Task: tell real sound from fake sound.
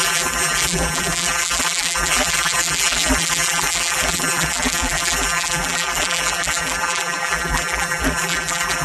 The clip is fake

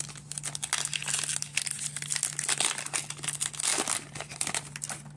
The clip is real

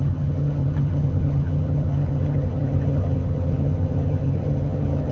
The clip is fake